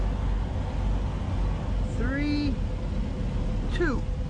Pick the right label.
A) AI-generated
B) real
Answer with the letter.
B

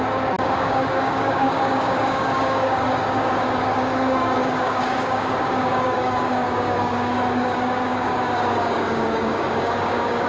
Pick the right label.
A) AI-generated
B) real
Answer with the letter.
A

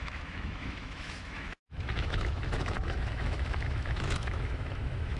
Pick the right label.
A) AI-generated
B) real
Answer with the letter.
A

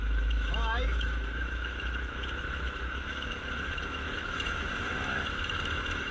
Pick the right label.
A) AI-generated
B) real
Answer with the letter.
A